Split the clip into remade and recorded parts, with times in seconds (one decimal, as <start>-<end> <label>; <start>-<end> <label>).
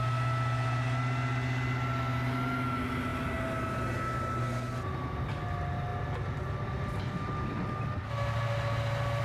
0.0-9.2 recorded